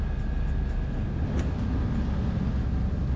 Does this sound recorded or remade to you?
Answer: recorded